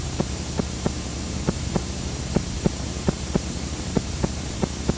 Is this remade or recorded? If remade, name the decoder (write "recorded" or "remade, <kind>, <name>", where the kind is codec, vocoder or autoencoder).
remade, vocoder, BigVGAN v2